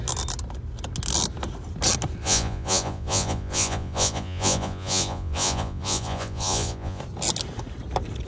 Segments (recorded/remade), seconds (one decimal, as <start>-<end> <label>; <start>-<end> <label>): 0.0-2.2 recorded; 2.2-7.0 remade; 7.0-8.3 recorded